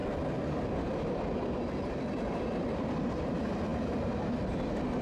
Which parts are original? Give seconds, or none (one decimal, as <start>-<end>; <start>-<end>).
0.0-0.6